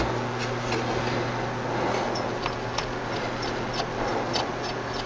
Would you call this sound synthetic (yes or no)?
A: no